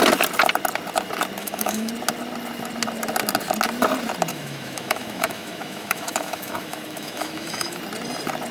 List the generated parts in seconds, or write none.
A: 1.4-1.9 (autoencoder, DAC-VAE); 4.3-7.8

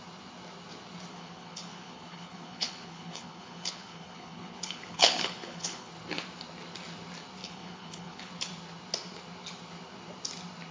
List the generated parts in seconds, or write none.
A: 1.1-5.9 (codec, HILCodec); 7.4-8.3